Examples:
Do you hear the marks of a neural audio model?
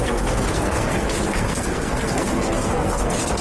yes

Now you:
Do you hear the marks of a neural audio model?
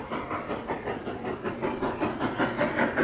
no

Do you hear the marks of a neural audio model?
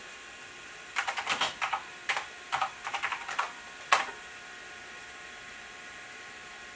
yes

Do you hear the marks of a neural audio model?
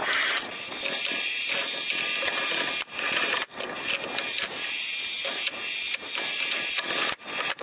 no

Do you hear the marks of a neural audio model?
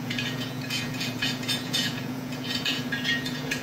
yes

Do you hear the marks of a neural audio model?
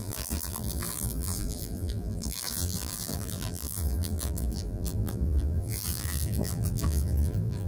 yes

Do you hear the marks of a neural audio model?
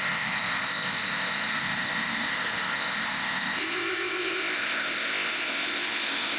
yes